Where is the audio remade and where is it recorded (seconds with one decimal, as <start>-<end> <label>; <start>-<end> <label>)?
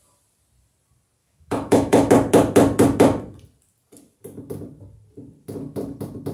0.0-1.2 recorded; 1.2-2.1 remade; 2.1-6.3 recorded